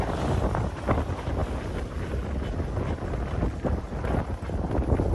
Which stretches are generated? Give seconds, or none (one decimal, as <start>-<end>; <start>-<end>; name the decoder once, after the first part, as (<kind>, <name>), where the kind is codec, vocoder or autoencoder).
none